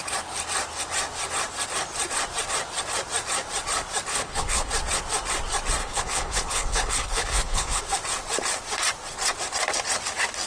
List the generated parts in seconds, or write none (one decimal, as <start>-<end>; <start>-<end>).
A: 4.1-4.7; 5.8-7.8